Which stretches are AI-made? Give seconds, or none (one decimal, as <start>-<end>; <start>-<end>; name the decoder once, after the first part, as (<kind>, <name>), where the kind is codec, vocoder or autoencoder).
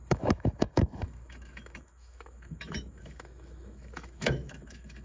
0.0-5.0 (autoencoder, DAC-VAE)